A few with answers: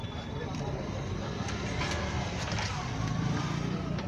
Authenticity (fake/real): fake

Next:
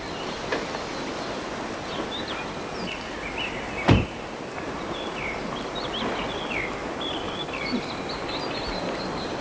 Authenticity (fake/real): real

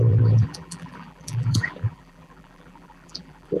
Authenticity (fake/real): fake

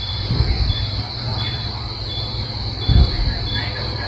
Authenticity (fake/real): fake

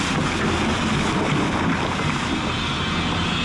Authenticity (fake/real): real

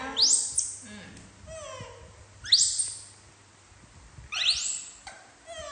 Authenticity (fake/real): real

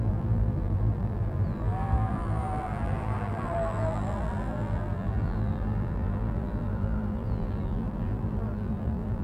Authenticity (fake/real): fake